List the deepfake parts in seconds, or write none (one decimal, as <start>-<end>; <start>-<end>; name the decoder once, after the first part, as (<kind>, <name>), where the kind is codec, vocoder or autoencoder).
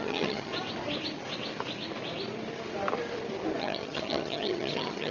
0.0-0.5 (vocoder, HiFi-GAN); 3.6-5.1